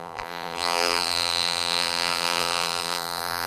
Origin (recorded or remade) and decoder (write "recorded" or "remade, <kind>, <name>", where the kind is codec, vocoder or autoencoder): remade, vocoder, BigVGAN v2